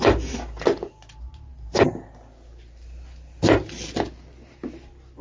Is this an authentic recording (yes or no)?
yes